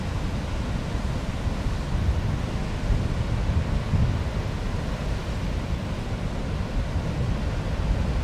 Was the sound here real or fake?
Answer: real